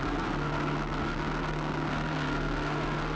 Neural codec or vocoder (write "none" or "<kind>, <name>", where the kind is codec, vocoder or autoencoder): codec, SNAC